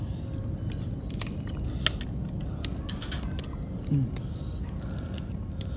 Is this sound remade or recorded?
recorded